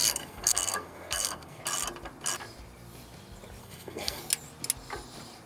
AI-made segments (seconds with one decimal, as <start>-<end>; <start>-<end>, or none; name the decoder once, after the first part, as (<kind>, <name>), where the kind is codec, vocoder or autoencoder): 0.0-1.6 (codec, SNAC); 3.6-4.2